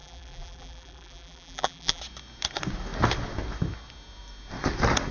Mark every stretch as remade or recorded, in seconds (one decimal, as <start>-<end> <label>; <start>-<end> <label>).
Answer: 0.0-2.0 remade; 2.0-5.1 recorded